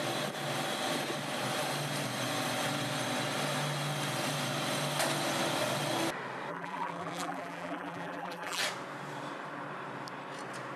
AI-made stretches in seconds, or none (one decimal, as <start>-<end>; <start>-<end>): 6.5-8.6